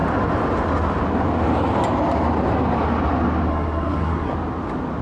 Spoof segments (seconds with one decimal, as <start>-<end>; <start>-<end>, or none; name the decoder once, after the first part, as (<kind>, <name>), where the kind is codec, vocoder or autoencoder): 3.5-4.3 (codec, SNAC)